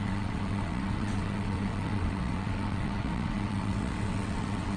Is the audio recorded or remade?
remade